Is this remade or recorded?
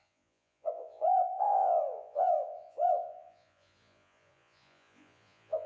remade